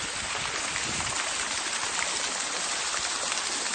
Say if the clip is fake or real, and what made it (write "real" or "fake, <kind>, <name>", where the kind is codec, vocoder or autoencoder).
real